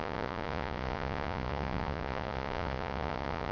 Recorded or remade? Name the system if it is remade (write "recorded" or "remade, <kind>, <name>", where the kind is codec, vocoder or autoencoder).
remade, vocoder, Vocos